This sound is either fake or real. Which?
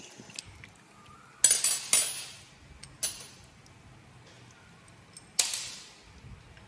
real